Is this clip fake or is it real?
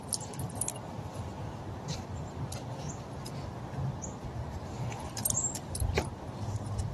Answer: real